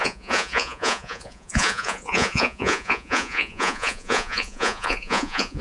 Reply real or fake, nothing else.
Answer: fake